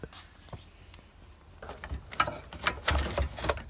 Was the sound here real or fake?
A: real